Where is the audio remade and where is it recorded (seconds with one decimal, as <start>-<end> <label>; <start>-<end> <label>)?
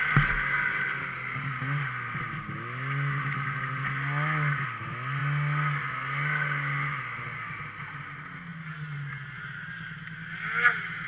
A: 0.0-11.1 recorded